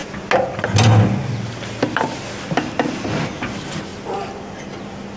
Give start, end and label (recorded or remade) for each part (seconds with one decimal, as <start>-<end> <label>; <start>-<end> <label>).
0.0-5.2 recorded